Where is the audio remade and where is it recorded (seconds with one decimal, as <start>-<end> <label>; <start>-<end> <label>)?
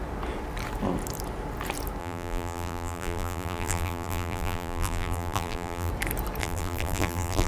0.0-2.0 recorded; 2.0-5.9 remade; 5.9-6.4 recorded; 6.4-7.5 remade